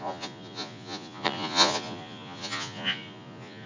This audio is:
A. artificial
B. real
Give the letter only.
A